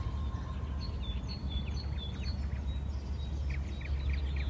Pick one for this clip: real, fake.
real